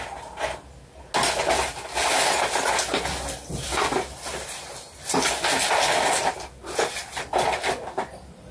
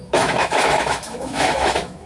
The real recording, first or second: first